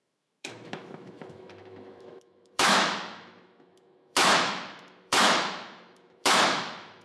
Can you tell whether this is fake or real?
fake